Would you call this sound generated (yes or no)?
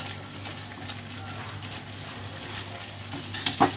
no